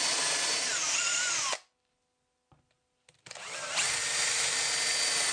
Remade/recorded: recorded